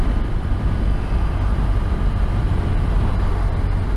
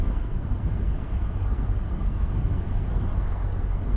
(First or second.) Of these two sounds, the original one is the first